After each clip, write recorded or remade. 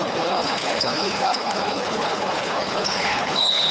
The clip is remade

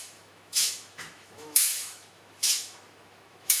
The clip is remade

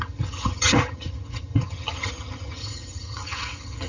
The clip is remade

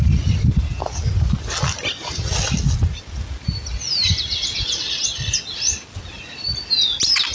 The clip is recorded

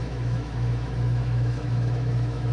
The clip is remade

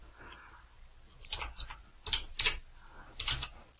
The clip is recorded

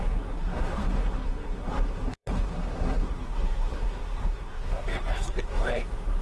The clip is remade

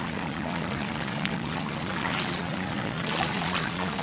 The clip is remade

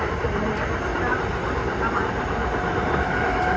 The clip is recorded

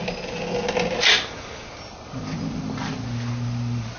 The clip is recorded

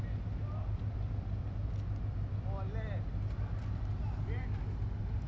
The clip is recorded